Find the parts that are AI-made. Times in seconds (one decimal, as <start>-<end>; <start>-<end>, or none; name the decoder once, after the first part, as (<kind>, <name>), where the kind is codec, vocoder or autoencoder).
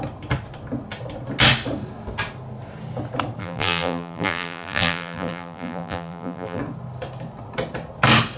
3.4-6.6 (vocoder, BigVGAN v2)